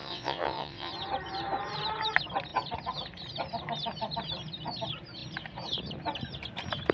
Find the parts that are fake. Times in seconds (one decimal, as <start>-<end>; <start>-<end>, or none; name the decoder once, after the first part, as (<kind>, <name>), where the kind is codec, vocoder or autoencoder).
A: 0.0-0.9 (vocoder, WaveNeXt)